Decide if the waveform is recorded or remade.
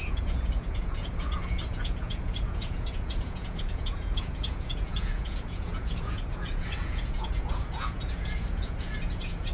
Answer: remade